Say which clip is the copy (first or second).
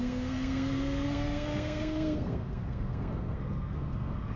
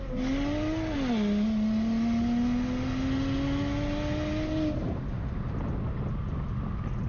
first